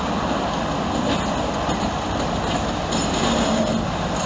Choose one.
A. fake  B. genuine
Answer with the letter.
B